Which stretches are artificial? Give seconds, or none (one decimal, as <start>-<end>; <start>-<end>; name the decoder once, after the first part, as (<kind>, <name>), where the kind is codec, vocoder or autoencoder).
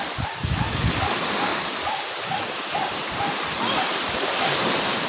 1.5-4.6 (vocoder, BigVGAN v2)